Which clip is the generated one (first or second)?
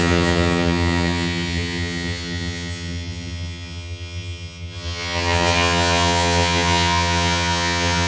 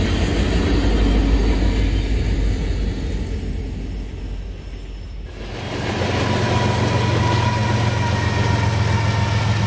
first